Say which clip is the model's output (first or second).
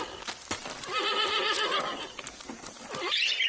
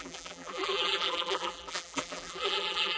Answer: second